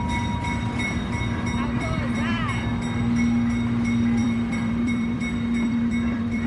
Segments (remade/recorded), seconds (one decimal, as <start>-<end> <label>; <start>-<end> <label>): 0.0-2.0 recorded; 2.0-2.7 remade; 2.7-4.2 recorded; 4.2-6.5 remade